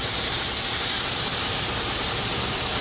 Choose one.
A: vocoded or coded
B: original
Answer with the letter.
A